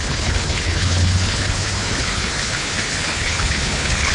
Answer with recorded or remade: remade